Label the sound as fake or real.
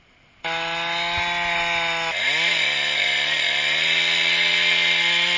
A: real